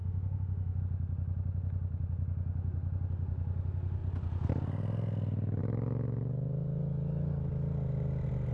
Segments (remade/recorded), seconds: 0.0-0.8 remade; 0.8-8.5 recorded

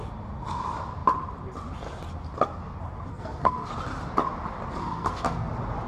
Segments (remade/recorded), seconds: 0.0-3.1 recorded; 3.1-3.7 remade; 3.7-4.8 recorded; 4.8-5.5 remade; 5.5-5.9 recorded

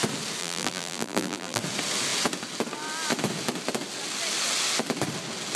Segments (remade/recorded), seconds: 0.0-0.4 recorded; 0.4-1.6 remade; 1.6-5.6 recorded